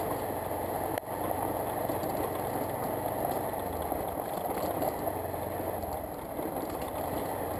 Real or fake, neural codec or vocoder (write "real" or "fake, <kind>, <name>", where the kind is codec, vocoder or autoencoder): real